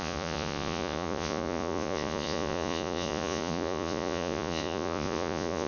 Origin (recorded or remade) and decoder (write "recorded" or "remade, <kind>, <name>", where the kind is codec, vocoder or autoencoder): remade, vocoder, Vocos